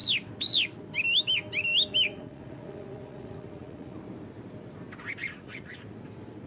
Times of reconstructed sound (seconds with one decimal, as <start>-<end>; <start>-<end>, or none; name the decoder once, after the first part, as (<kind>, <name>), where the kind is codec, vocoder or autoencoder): 2.1-4.0 (vocoder, Vocos); 5.2-5.8